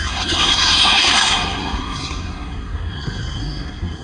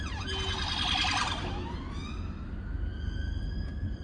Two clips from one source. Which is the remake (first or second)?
first